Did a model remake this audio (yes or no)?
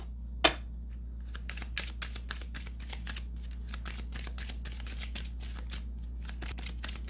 no